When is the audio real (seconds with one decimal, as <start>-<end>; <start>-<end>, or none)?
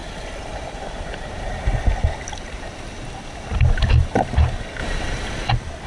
1.7-4.8; 5.5-5.9